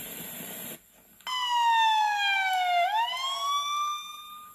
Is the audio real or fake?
real